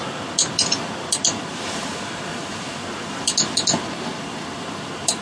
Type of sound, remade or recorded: recorded